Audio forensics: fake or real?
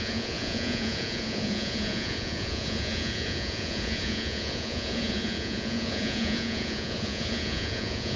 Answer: fake